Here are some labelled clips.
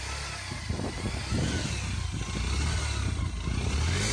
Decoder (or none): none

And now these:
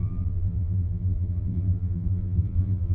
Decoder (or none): vocoder, BigVGAN v2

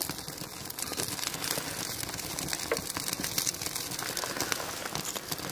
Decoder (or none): none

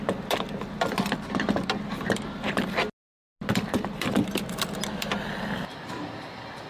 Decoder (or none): none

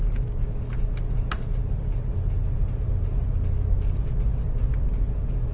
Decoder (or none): none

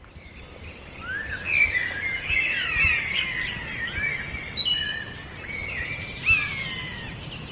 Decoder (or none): none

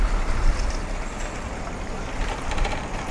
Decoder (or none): vocoder, BigVGAN v2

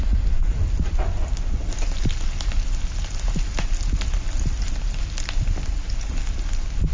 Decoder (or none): none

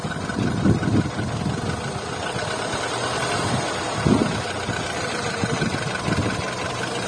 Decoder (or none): none